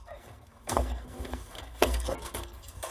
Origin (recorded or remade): remade